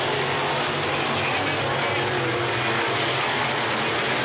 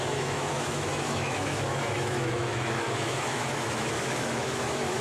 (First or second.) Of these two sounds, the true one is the first